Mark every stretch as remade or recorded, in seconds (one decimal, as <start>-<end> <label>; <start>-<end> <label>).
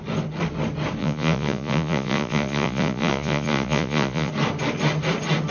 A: 0.0-1.0 recorded; 1.0-4.3 remade; 4.3-5.5 recorded